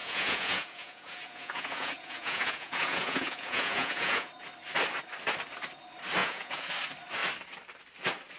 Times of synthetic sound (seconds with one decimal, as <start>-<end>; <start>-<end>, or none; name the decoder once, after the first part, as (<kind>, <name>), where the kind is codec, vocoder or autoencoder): 0.0-4.3 (vocoder, Vocos); 6.2-6.7